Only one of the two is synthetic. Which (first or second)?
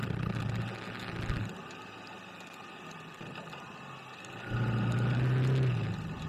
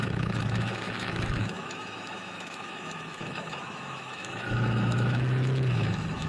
second